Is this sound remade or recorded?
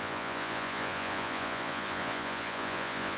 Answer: remade